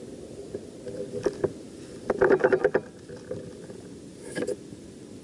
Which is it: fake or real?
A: real